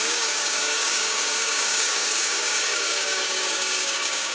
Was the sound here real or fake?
fake